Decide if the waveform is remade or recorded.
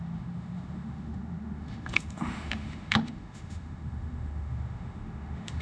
remade